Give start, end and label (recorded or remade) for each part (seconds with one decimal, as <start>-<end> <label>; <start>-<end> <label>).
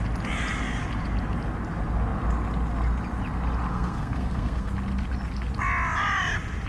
0.0-3.7 recorded; 3.7-4.7 remade; 4.7-6.7 recorded